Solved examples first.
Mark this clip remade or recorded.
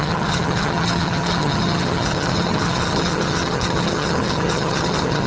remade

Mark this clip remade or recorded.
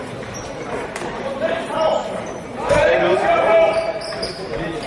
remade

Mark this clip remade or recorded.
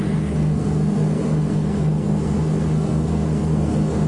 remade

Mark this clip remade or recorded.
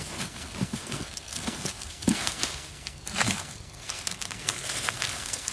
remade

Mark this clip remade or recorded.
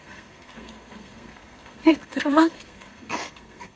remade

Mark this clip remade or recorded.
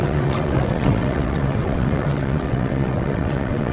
remade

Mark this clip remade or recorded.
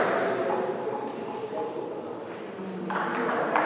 recorded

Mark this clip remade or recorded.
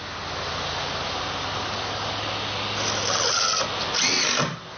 recorded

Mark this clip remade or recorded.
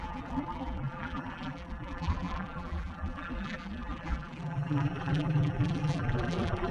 remade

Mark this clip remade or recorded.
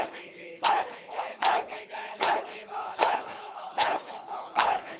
remade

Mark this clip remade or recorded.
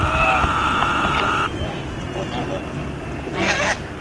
recorded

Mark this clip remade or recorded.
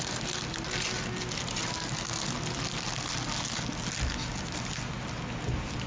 recorded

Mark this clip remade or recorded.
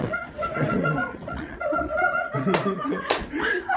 remade